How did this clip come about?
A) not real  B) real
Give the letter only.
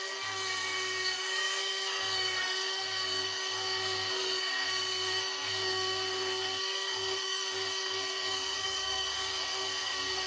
A